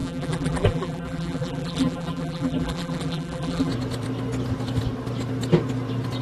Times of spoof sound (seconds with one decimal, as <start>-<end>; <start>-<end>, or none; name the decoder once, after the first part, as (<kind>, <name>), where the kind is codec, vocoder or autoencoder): 0.0-3.7 (vocoder, BigVGAN v2)